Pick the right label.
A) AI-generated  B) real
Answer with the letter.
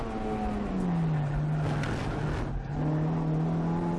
B